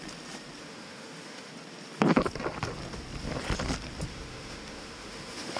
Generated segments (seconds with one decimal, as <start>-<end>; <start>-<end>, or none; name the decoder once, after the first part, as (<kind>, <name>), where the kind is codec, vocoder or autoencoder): 0.6-1.5 (autoencoder, DAC-VAE); 4.1-5.6